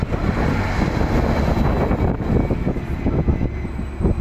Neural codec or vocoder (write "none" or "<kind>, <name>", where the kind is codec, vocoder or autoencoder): none